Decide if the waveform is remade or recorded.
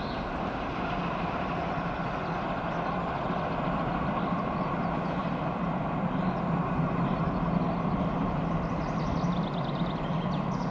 recorded